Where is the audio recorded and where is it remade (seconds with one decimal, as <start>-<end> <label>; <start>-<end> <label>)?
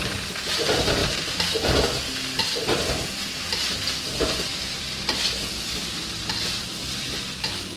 0.0-4.5 recorded; 4.5-7.3 remade; 7.3-7.8 recorded